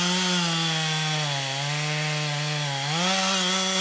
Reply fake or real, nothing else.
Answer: real